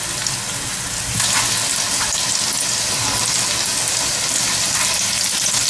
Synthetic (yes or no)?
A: no